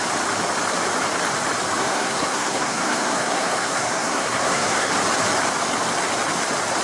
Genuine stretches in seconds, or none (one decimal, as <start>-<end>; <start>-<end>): 0.0-1.8; 4.9-6.8